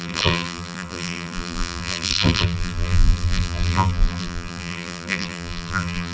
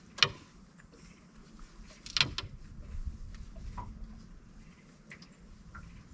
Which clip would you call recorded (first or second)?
second